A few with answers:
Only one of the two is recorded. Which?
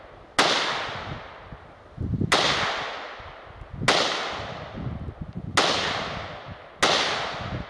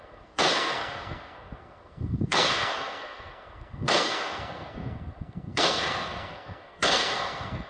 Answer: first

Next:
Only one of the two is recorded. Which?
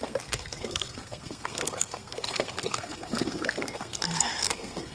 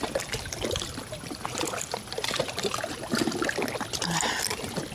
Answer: second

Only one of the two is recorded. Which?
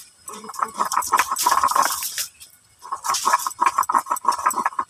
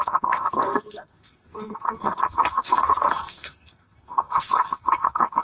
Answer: first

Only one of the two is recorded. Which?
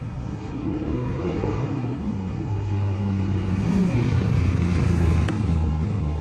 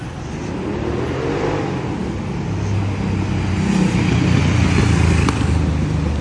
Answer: second